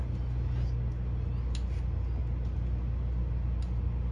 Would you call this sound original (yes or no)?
yes